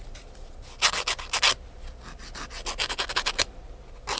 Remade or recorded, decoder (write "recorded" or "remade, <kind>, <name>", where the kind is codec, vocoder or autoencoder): recorded